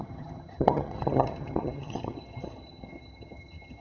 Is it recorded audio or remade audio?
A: remade